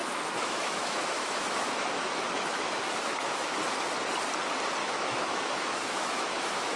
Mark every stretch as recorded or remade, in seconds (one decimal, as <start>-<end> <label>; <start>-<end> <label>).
0.0-3.5 remade; 3.5-4.8 recorded; 4.8-6.8 remade